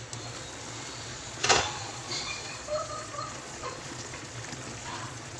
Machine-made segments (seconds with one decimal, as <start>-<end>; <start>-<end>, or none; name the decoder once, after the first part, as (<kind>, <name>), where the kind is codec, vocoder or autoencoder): 1.1-4.3 (vocoder, Vocos); 4.8-5.4